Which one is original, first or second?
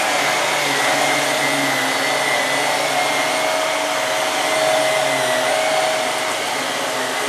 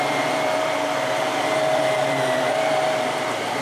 first